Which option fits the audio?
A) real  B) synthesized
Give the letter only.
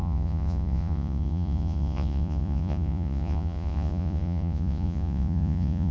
B